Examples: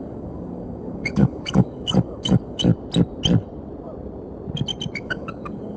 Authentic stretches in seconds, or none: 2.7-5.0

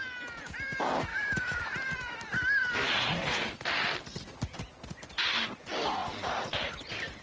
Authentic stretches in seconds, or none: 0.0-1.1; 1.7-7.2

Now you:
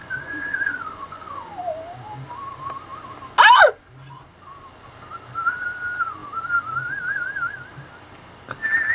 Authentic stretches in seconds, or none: 1.5-8.9